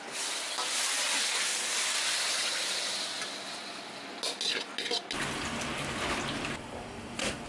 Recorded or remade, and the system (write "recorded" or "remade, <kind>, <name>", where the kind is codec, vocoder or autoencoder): recorded